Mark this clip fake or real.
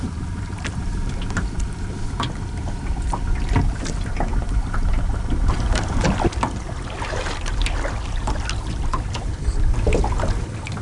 real